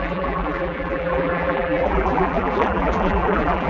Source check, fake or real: fake